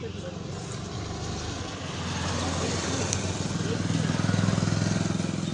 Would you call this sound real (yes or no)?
yes